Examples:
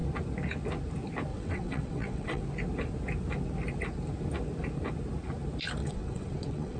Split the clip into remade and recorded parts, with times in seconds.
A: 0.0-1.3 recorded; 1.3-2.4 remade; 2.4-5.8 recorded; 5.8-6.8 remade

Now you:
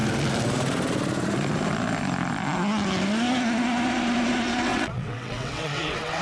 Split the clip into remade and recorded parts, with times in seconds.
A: 0.0-4.7 recorded; 4.7-6.2 remade

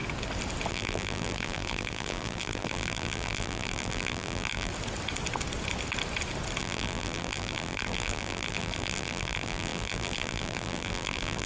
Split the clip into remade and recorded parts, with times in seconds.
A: 0.0-0.7 recorded; 0.7-4.7 remade; 4.7-6.6 recorded; 6.6-11.5 remade

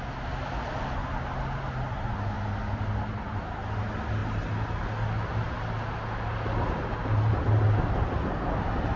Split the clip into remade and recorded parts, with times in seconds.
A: 0.0-9.0 recorded

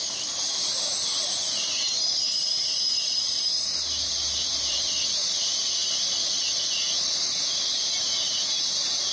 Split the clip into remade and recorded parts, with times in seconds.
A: 0.0-1.2 recorded; 1.2-3.7 remade; 3.7-4.5 recorded; 4.5-5.1 remade; 5.1-9.1 recorded

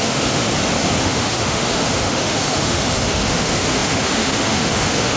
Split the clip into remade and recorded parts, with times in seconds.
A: 0.0-0.4 remade; 0.4-1.0 recorded; 1.0-5.2 remade

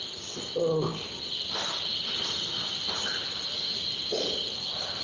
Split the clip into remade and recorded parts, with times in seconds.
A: 0.0-5.0 recorded

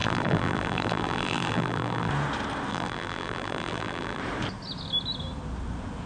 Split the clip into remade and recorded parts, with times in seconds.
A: 0.0-2.1 remade; 2.1-2.7 recorded; 2.7-4.2 remade; 4.2-6.1 recorded